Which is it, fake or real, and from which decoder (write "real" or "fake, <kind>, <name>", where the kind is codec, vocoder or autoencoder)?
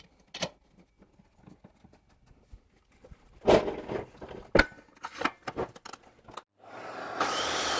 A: real